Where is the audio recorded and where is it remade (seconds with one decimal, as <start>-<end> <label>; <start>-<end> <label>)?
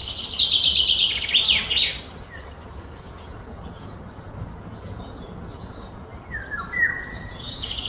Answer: 0.0-2.6 recorded; 2.6-6.1 remade; 6.1-6.6 recorded; 6.6-7.9 remade